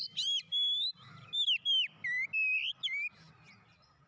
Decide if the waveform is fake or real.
real